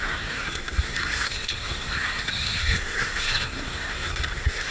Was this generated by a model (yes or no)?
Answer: yes